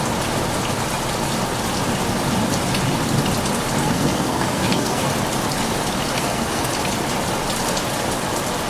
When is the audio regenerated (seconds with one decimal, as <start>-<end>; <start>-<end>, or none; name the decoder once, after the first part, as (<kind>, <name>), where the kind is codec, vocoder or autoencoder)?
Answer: 3.8-5.1 (codec, SNAC); 6.1-6.7